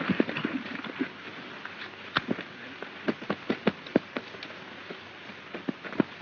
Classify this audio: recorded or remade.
recorded